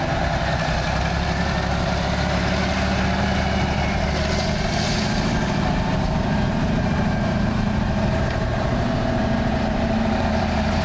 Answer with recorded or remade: remade